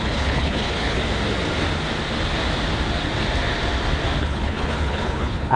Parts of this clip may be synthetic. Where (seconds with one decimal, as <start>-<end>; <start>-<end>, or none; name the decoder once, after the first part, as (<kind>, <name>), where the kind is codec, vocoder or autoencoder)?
0.0-1.0 (codec, HILCodec); 4.2-5.6